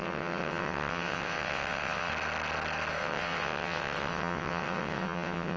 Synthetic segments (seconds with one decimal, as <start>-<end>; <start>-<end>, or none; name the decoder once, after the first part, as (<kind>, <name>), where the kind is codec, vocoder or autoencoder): 0.0-2.1 (vocoder, WaveNeXt); 3.0-5.6